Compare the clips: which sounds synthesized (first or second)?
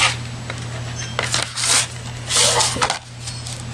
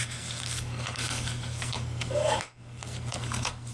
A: second